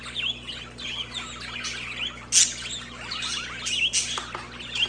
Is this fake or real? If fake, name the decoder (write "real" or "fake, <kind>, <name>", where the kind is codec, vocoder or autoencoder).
real